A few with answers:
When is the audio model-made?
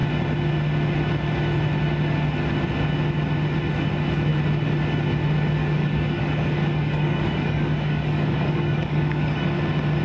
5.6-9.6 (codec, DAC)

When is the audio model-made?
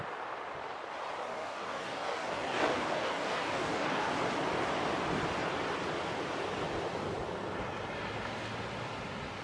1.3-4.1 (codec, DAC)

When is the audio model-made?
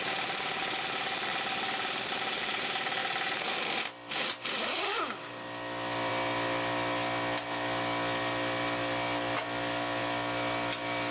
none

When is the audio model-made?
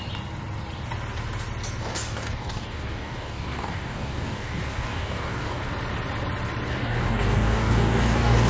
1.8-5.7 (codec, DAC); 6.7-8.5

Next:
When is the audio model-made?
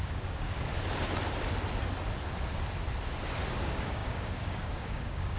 0.0-0.7 (codec, DAC); 3.5-5.4